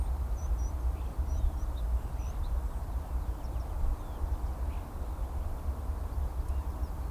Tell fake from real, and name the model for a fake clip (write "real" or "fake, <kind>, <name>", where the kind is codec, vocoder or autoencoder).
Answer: real